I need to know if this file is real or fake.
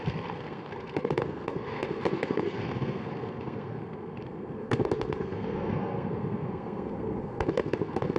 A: fake